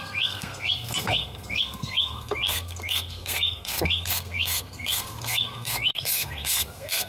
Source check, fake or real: fake